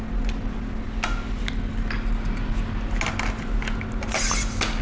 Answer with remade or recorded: recorded